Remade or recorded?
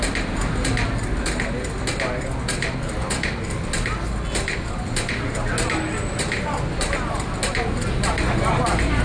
recorded